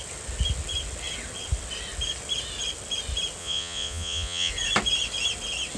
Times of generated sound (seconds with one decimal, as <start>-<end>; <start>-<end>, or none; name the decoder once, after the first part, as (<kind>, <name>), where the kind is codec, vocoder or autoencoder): 3.4-4.5 (vocoder, Vocos)